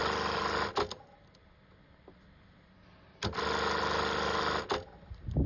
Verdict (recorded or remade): recorded